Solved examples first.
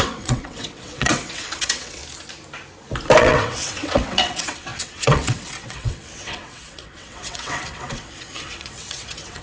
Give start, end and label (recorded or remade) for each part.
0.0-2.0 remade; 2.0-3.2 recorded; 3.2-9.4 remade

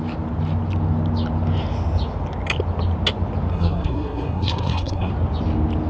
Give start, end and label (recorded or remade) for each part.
0.0-3.5 recorded; 3.5-5.1 remade; 5.1-5.9 recorded

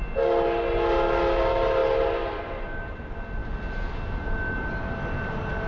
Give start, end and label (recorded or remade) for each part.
0.0-5.7 recorded

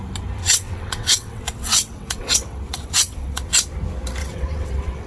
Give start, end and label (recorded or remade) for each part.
0.0-0.4 recorded; 0.4-3.5 remade; 3.5-4.2 recorded; 4.2-5.1 remade

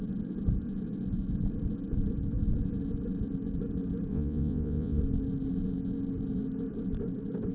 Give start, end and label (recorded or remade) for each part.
0.0-4.1 recorded; 4.1-5.0 remade; 5.0-7.5 recorded

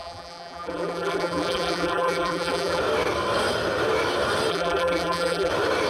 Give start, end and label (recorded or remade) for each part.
0.0-2.8 remade; 2.8-4.5 recorded; 4.5-5.5 remade; 5.5-5.9 recorded